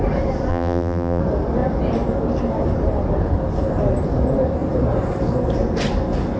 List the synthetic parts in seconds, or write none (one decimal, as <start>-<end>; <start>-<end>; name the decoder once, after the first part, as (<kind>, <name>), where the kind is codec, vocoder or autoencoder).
0.5-1.2 (vocoder, BigVGAN v2)